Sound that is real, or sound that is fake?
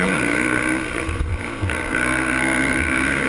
fake